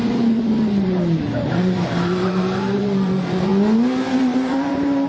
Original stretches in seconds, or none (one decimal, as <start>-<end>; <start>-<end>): 3.5-4.2